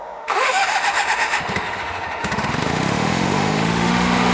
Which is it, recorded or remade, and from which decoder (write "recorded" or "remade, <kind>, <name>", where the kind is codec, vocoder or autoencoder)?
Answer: remade, autoencoder, DAC-VAE